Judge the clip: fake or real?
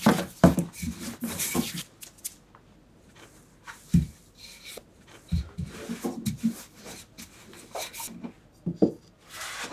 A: real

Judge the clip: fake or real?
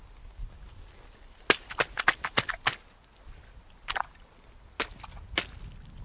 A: real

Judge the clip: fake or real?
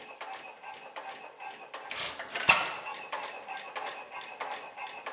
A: real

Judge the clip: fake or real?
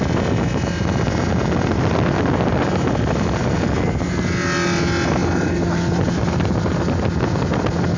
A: real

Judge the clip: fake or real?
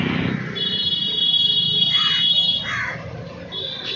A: real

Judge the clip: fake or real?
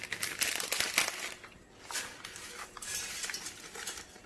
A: real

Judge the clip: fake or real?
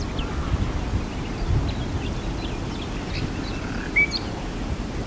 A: real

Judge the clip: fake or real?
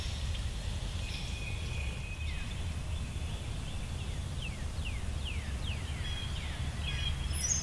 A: real